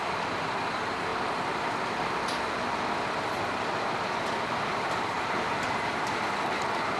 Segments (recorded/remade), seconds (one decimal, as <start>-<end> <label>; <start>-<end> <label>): 0.0-1.1 remade; 1.1-3.4 recorded; 3.4-7.0 remade